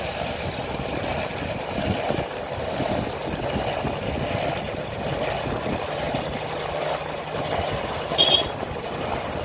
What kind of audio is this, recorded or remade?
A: recorded